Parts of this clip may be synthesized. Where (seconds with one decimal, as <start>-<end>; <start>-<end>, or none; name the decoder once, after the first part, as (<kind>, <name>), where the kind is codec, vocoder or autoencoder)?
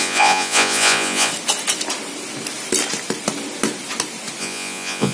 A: 0.0-1.3 (vocoder, Vocos); 4.4-5.1